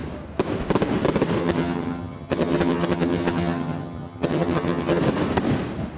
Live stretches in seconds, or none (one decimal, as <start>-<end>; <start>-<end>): 0.0-1.4; 5.0-6.0

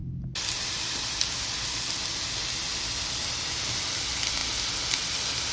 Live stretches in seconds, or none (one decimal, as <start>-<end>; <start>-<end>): 0.0-5.5

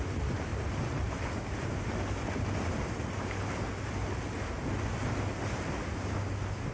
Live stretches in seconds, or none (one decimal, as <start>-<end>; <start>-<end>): 0.0-6.7

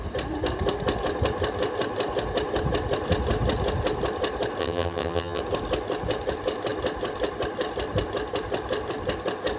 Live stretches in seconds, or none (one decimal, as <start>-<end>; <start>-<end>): 0.0-4.6; 5.4-9.6